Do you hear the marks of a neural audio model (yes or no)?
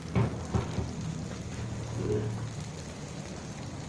no